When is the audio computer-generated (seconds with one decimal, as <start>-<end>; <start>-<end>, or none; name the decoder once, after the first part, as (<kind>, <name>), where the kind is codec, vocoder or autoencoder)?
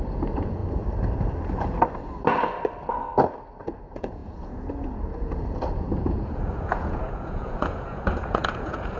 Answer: 0.0-0.6 (vocoder, Vocos); 3.8-9.0